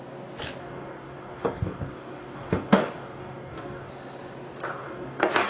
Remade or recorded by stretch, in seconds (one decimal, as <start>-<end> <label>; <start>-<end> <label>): 0.0-0.6 recorded; 0.6-3.9 remade; 3.9-4.7 recorded; 4.7-5.5 remade